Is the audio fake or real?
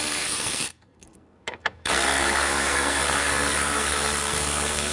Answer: fake